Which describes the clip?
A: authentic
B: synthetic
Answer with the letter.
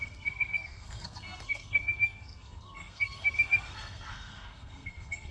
B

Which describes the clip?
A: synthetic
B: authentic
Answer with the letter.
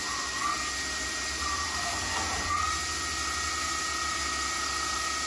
B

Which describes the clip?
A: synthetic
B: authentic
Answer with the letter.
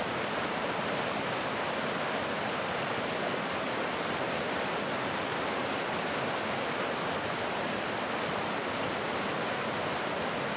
B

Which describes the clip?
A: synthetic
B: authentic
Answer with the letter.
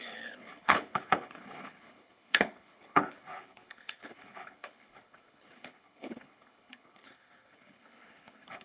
A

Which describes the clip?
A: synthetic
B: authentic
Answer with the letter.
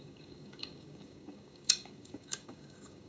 A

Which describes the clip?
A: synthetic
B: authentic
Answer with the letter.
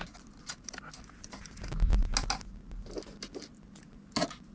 B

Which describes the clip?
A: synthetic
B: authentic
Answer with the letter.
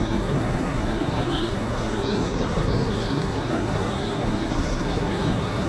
A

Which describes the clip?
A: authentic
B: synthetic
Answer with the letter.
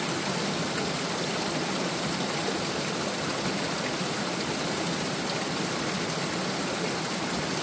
A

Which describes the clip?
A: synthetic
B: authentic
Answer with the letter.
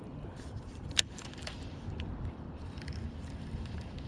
A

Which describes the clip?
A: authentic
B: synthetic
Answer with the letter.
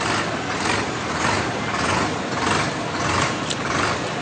A